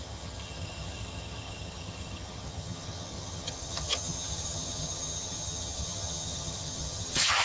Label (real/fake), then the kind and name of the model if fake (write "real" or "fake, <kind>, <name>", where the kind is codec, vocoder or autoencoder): fake, vocoder, HiFi-GAN